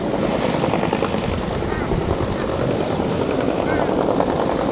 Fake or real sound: real